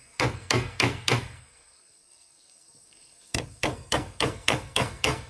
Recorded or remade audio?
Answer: remade